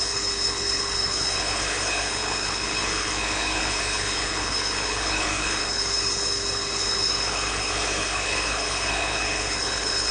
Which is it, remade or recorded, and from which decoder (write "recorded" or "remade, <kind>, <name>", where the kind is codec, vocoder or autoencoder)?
remade, codec, HILCodec